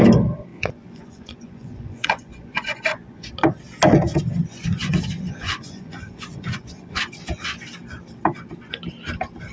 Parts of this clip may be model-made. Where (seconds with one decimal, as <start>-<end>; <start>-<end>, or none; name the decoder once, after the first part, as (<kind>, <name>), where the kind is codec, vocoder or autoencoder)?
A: 0.5-3.3 (vocoder, Vocos); 4.5-7.0